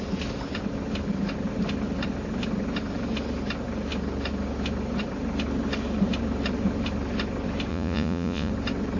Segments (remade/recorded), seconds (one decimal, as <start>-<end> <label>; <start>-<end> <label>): 0.0-7.7 recorded; 7.7-8.5 remade; 8.5-9.0 recorded